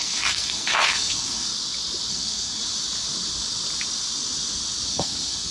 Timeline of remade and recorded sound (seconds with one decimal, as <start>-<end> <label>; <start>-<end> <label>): 0.0-1.5 remade; 1.5-2.1 recorded; 2.1-2.6 remade; 2.6-4.9 recorded; 4.9-5.5 remade